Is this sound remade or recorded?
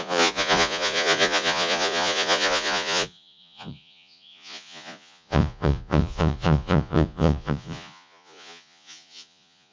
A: remade